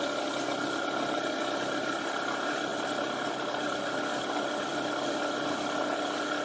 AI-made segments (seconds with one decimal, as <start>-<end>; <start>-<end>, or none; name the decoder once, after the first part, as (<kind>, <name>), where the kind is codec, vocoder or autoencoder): 2.7-3.8 (vocoder, BigVGAN v2); 4.7-5.2